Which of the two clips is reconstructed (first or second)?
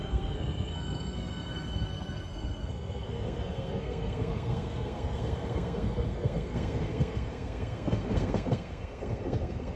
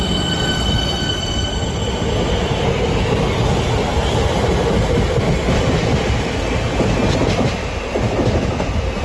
first